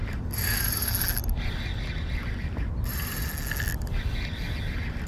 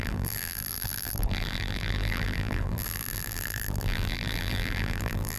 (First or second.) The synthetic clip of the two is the second